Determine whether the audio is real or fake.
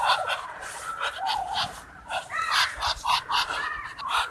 fake